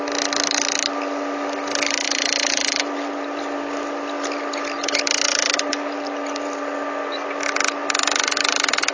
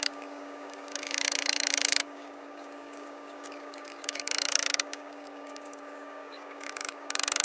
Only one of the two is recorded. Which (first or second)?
first